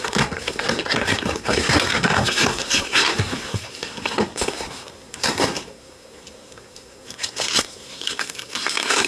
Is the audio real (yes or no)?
no